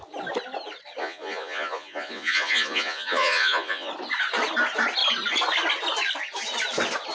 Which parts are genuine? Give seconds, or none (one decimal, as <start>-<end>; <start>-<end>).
0.0-1.0; 3.9-7.1

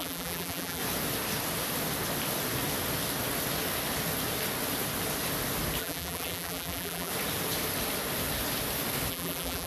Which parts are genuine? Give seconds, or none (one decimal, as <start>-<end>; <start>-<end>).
0.8-5.8; 7.1-9.1